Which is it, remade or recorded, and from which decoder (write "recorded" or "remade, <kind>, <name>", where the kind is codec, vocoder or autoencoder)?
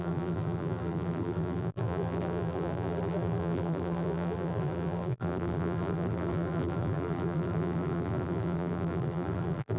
remade, vocoder, BigVGAN v2